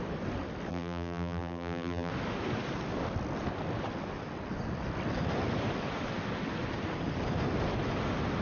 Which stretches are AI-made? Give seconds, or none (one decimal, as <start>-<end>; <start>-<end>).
0.7-2.1